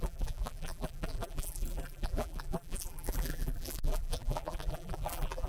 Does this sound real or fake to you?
fake